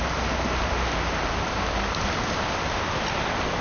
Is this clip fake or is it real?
real